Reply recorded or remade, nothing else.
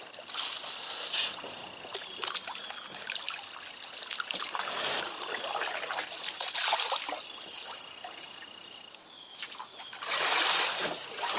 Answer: recorded